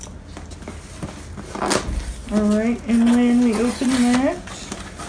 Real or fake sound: real